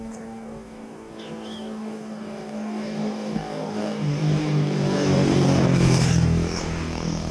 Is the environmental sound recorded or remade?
remade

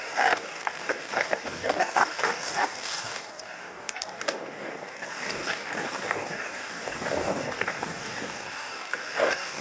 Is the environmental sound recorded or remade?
remade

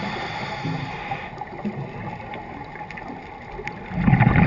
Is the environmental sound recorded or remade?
recorded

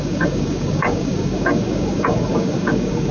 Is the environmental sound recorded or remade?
remade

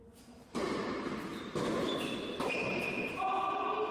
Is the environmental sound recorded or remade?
recorded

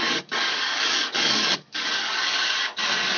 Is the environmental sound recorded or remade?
remade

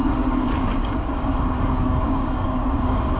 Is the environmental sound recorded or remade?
remade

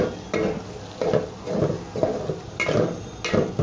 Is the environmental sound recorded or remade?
recorded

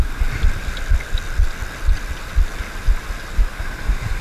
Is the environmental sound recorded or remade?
recorded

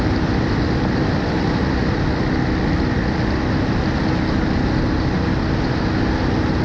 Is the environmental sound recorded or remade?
recorded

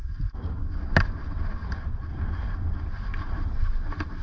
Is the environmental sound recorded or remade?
recorded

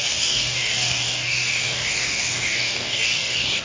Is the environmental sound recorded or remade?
remade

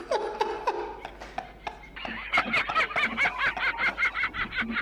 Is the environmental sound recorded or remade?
recorded